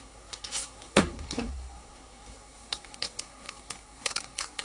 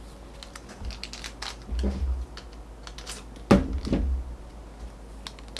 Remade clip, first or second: first